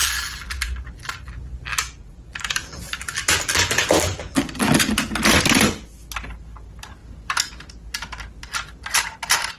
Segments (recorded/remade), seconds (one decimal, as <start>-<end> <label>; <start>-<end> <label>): 0.0-5.0 remade; 5.0-9.6 recorded